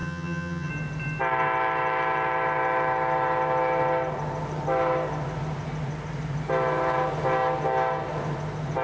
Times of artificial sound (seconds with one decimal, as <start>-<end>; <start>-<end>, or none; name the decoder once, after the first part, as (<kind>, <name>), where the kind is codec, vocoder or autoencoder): 0.0-0.7 (vocoder, HiFi-GAN)